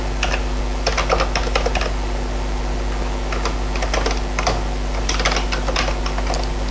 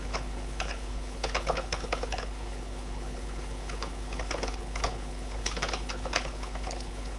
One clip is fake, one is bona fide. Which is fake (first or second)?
second